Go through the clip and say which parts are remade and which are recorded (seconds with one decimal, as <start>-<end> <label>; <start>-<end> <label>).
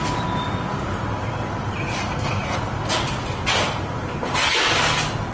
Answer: 0.0-2.0 recorded; 2.0-2.6 remade; 2.6-5.3 recorded